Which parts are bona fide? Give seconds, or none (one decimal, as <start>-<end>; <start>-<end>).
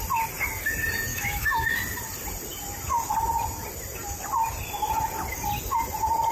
0.0-1.1; 1.7-6.3